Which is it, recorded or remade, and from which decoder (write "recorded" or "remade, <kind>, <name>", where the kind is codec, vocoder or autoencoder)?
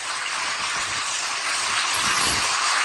recorded